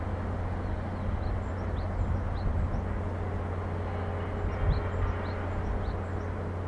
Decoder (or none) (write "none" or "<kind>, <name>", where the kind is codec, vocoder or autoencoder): none